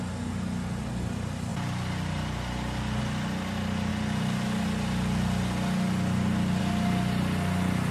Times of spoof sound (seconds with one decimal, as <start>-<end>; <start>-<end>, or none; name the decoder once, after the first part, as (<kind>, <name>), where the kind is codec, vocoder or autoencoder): none